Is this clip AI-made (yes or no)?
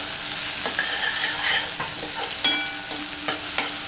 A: no